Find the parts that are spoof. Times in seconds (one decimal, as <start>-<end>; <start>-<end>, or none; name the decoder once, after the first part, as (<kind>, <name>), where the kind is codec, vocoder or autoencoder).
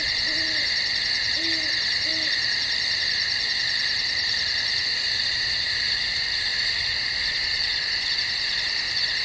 2.1-5.5 (vocoder, BigVGAN v2)